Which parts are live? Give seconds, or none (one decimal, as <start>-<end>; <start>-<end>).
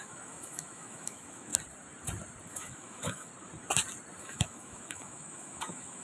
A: 1.5-2.5; 3.3-4.2